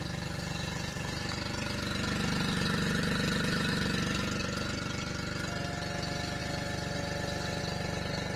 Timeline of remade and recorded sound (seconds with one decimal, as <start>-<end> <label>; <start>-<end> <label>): 0.0-8.4 recorded